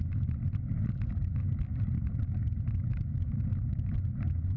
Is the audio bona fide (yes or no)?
yes